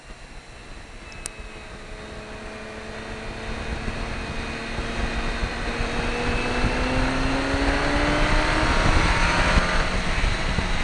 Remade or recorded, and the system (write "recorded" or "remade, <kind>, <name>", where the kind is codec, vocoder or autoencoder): recorded